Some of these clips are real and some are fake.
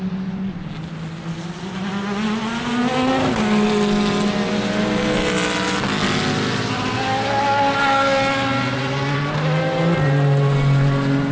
real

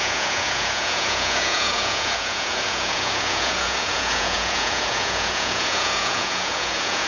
fake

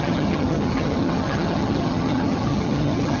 fake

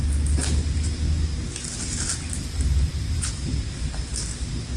real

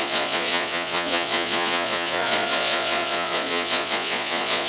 fake